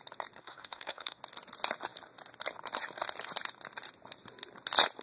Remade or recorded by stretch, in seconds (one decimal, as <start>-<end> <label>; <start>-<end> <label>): 0.0-0.4 recorded; 0.4-1.2 remade; 1.2-5.0 recorded